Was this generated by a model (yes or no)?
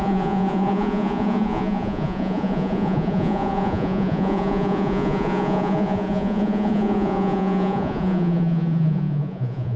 yes